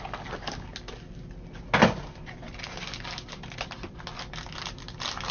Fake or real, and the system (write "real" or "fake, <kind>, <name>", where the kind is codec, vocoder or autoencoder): real